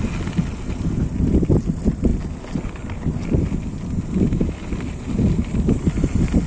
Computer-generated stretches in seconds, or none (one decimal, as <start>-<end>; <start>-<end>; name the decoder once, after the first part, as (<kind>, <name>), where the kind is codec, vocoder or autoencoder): none